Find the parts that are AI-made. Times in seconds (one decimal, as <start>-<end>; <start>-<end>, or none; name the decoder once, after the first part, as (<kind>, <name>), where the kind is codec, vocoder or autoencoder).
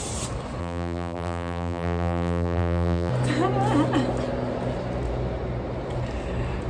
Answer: 0.6-3.1 (vocoder, BigVGAN v2)